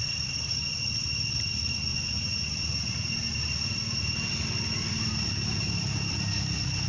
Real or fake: real